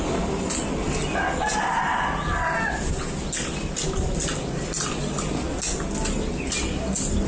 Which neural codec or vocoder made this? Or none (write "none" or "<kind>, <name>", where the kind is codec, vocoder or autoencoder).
none